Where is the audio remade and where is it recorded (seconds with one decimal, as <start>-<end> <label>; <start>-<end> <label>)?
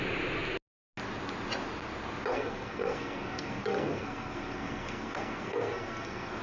0.0-2.3 recorded; 2.3-6.4 remade